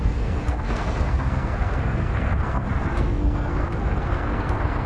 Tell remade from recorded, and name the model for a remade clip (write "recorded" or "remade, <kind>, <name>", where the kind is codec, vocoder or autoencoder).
remade, codec, SNAC